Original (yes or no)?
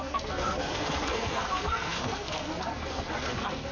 no